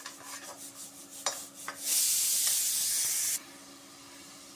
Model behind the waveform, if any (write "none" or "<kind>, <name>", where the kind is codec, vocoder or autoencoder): none